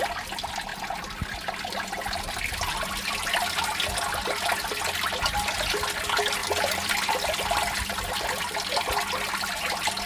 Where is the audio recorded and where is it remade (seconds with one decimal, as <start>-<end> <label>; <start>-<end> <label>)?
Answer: 0.0-10.1 recorded